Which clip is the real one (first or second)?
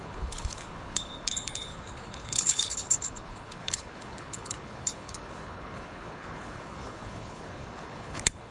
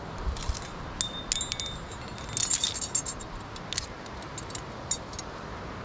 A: second